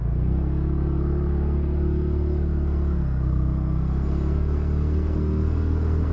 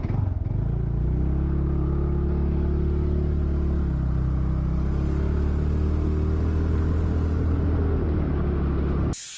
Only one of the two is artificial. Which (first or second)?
first